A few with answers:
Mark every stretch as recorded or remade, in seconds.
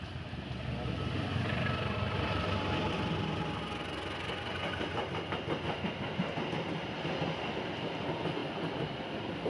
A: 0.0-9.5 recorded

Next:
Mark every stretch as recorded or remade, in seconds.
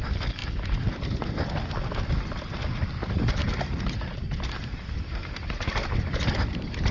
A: 0.0-0.4 recorded; 0.4-1.0 remade; 1.0-3.4 recorded; 3.4-5.9 remade; 5.9-6.9 recorded